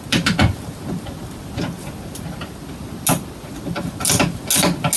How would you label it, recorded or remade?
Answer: recorded